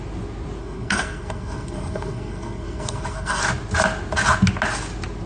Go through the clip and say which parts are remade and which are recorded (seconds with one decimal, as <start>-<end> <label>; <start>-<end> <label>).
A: 0.0-0.6 recorded; 0.6-3.4 remade; 3.4-5.3 recorded